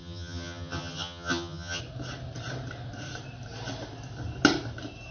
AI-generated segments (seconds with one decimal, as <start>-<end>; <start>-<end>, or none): 0.0-1.8